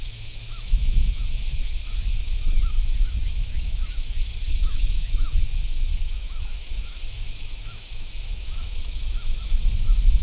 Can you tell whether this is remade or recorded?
remade